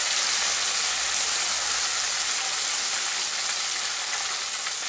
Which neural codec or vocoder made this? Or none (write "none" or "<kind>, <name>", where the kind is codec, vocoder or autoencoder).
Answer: none